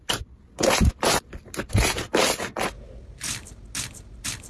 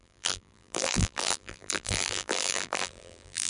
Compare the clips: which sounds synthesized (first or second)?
second